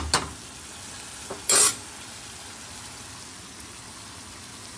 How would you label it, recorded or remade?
recorded